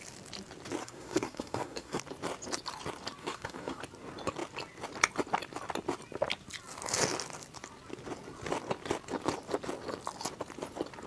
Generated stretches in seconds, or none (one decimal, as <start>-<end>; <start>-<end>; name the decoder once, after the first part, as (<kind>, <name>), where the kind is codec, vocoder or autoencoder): 0.8-2.0 (codec, SNAC); 3.2-3.8